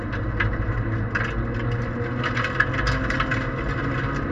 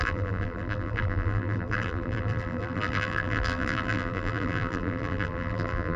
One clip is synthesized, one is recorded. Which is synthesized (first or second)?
second